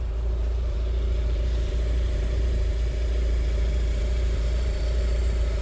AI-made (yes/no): yes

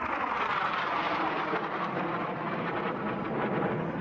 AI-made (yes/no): no